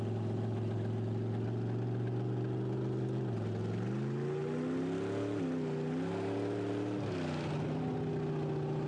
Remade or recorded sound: recorded